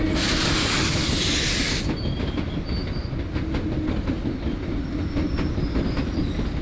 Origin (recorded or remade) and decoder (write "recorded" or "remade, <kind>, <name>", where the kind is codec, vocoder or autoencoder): recorded